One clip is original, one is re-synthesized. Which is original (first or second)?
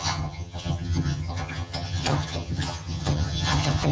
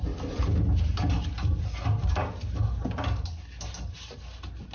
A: second